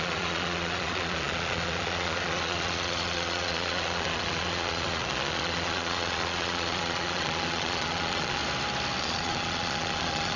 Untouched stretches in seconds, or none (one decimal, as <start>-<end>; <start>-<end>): 8.4-9.0